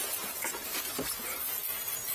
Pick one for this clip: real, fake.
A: real